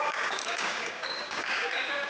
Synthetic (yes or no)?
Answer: yes